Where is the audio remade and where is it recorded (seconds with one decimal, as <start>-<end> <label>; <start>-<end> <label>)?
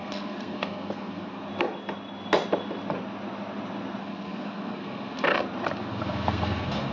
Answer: 0.0-1.5 remade; 1.5-4.0 recorded; 4.0-5.3 remade; 5.3-5.9 recorded; 5.9-6.9 remade